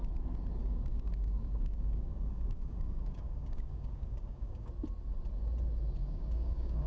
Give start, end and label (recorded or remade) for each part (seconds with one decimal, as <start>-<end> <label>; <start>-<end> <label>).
0.0-0.6 recorded; 0.6-4.7 remade; 4.7-6.0 recorded; 6.0-6.9 remade